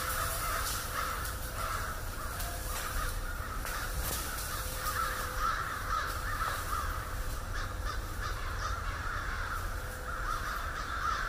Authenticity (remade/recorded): remade